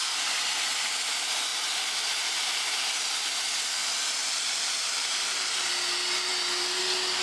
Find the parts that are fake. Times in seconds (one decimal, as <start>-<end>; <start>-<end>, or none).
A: 3.8-5.7